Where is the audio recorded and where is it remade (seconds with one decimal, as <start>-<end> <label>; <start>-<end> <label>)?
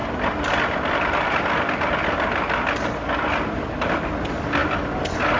0.0-5.4 recorded